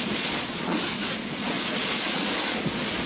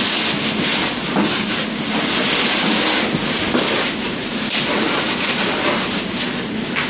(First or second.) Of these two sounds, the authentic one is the second